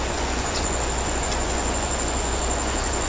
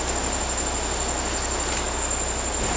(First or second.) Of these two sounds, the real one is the second